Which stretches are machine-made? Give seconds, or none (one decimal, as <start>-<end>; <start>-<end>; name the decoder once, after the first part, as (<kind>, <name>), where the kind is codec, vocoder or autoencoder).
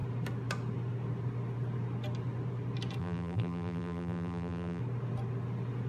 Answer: 3.0-4.8 (vocoder, BigVGAN v2)